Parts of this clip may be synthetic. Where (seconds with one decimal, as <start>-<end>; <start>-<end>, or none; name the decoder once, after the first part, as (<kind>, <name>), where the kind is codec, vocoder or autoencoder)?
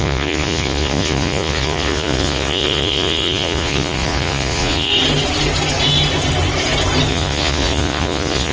0.0-4.9 (vocoder, Vocos); 7.1-8.5